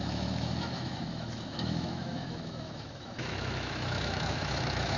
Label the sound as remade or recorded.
remade